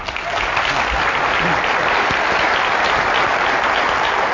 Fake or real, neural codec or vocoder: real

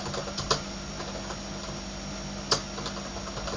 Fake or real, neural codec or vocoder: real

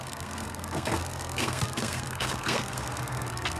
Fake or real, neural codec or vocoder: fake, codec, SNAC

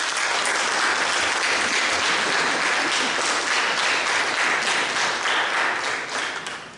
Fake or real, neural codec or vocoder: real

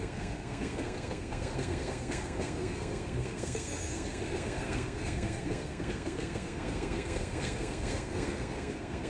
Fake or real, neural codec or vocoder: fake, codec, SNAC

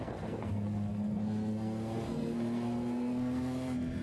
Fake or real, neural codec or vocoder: fake, codec, SNAC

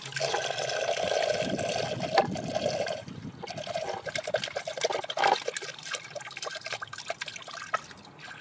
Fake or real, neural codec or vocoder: real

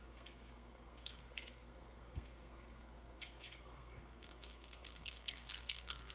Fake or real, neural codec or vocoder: fake, codec, SNAC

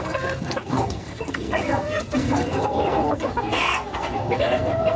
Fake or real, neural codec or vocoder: fake, codec, SNAC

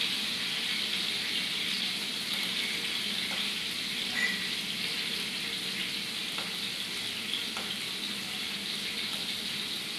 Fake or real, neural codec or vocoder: real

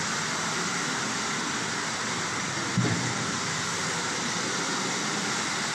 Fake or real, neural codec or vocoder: real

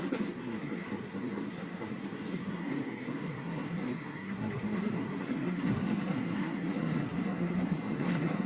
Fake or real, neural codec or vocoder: fake, codec, SNAC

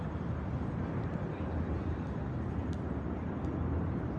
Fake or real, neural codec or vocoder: real